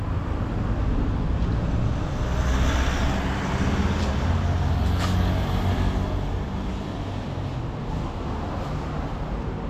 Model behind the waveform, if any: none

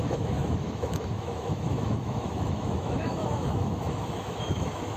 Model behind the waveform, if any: autoencoder, DAC-VAE